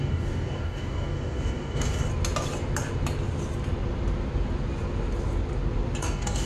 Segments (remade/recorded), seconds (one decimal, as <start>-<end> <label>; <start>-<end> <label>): 0.0-2.1 remade; 2.1-6.0 recorded; 6.0-6.5 remade